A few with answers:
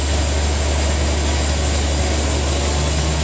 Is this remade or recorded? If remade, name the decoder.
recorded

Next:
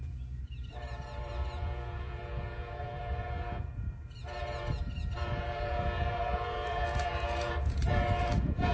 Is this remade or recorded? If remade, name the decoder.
remade, vocoder, Vocos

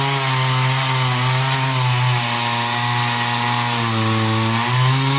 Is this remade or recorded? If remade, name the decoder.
recorded